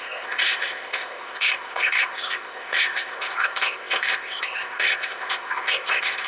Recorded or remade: remade